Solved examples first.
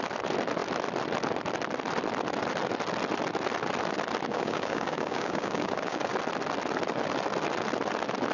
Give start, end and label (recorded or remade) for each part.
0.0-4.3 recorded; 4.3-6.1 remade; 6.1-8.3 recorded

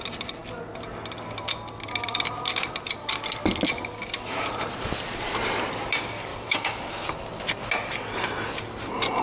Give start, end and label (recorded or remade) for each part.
0.0-6.3 recorded; 6.3-6.9 remade; 6.9-9.2 recorded